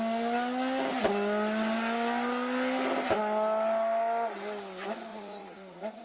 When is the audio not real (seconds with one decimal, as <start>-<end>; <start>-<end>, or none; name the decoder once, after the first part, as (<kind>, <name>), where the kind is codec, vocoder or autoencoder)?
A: 5.1-6.0 (vocoder, Vocos)